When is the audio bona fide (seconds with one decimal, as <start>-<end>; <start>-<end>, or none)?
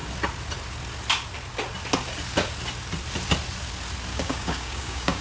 0.0-4.1